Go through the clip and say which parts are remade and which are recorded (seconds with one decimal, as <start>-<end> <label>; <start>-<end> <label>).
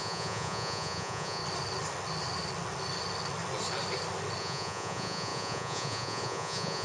0.0-1.4 remade; 1.4-4.4 recorded; 4.4-6.8 remade